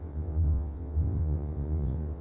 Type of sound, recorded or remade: remade